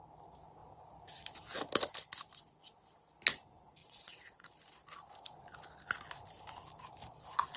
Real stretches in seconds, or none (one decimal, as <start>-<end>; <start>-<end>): 0.0-3.8; 4.5-7.6